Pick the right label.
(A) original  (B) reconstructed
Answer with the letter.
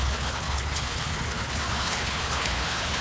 B